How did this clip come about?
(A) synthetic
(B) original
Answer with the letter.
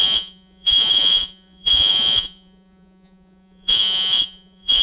A